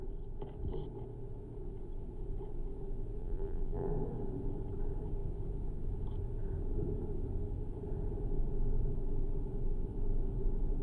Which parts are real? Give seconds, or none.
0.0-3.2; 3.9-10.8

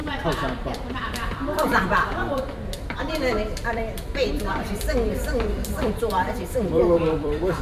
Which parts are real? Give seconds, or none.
2.4-3.6

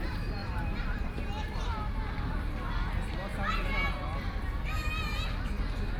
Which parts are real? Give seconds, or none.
0.0-0.4; 2.5-6.0

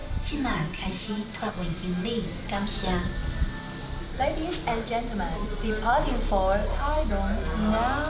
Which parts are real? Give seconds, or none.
1.5-6.6; 7.1-8.1

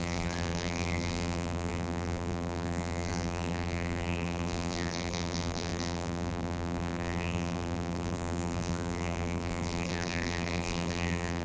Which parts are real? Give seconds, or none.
none